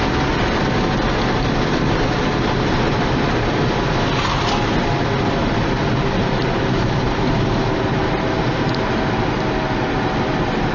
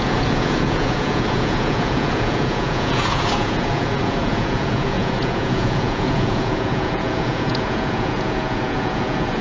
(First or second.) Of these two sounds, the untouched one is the first